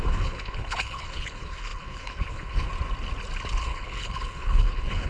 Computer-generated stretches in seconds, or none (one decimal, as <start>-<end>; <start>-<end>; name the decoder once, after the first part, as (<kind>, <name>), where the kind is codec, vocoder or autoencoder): 0.0-2.7 (codec, HILCodec); 3.6-5.1